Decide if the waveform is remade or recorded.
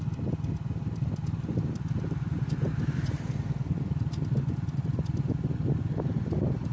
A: recorded